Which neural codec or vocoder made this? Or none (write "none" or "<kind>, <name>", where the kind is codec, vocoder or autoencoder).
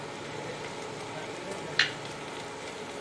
none